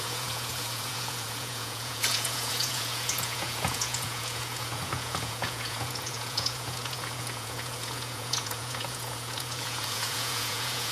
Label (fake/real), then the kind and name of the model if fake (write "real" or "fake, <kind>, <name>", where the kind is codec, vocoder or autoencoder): fake, vocoder, Vocos